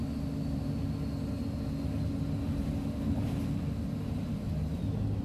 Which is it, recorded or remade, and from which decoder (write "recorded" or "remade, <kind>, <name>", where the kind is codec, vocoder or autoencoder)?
recorded